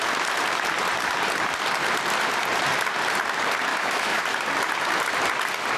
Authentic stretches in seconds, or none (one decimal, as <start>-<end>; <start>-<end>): 0.0-3.7; 4.2-5.8